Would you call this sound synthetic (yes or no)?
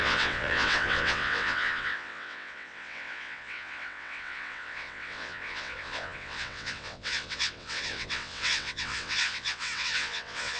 yes